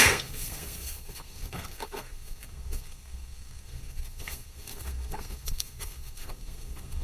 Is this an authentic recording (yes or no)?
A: no